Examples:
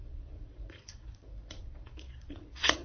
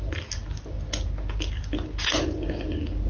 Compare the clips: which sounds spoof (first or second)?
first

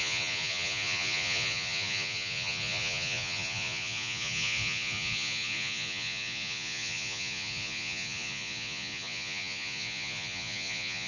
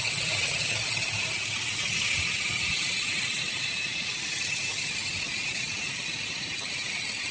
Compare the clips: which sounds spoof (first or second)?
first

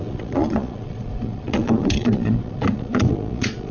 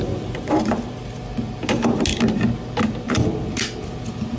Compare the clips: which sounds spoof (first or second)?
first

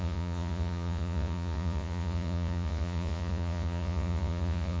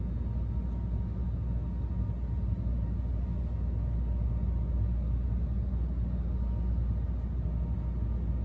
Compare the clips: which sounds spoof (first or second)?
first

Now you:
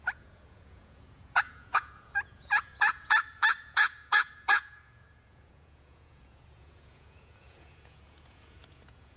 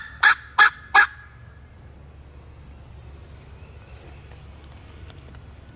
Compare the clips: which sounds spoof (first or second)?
first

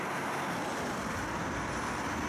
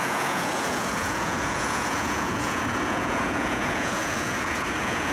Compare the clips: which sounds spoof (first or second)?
second